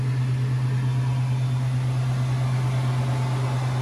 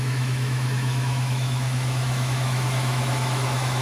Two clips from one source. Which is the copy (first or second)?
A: second